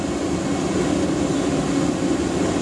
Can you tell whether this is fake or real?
real